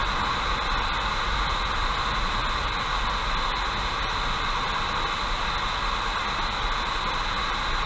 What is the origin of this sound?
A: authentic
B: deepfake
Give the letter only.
A